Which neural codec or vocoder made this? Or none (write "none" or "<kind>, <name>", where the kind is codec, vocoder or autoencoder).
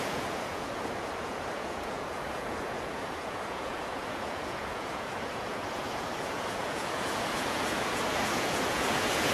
vocoder, Vocos